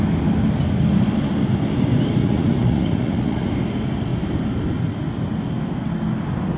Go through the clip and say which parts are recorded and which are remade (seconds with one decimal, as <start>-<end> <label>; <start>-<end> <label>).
0.0-2.2 recorded; 2.2-3.5 remade; 3.5-6.6 recorded